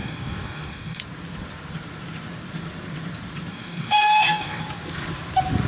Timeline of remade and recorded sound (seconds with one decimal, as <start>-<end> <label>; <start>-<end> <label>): 0.0-1.0 remade; 1.0-3.5 recorded; 3.5-4.6 remade; 4.6-5.7 recorded